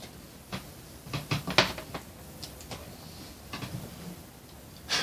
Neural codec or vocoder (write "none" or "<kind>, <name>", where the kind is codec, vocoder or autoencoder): none